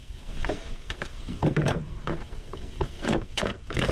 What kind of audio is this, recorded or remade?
remade